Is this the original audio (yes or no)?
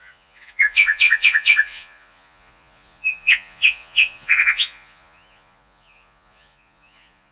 no